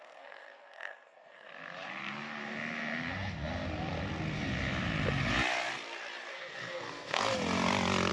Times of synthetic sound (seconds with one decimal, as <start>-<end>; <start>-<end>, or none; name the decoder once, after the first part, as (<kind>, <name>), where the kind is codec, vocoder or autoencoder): 0.0-1.5 (codec, SNAC); 6.3-7.3